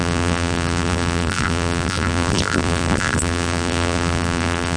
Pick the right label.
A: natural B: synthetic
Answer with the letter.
B